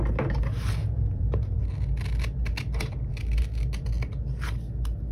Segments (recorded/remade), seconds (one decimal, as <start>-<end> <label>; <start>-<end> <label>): 0.0-0.8 recorded; 0.8-1.6 remade; 1.6-5.1 recorded